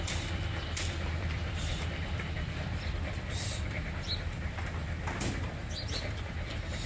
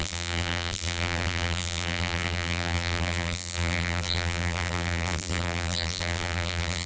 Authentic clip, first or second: first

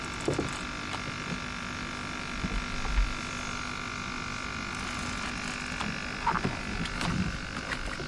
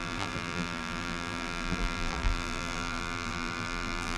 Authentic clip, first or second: first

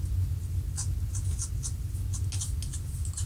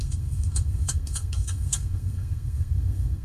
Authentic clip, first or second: first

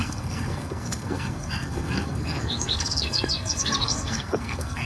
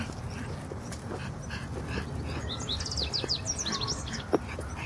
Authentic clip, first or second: second